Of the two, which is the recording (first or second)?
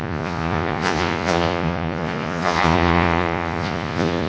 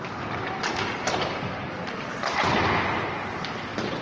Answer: second